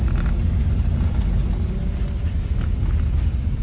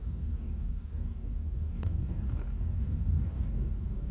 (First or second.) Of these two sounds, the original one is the first